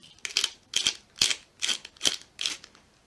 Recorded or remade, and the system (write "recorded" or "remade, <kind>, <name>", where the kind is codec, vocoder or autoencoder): recorded